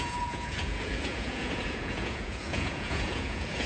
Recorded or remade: remade